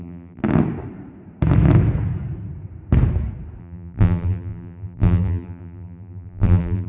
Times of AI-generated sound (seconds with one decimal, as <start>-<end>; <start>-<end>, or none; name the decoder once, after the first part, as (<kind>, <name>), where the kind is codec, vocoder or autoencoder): 0.0-0.4 (vocoder, BigVGAN v2); 3.6-6.9